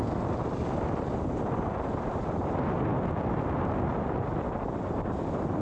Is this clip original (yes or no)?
yes